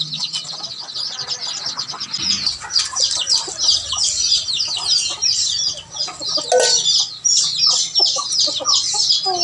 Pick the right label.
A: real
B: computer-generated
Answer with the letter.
A